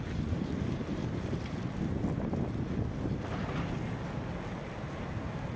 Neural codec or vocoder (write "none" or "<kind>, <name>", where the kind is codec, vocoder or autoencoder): none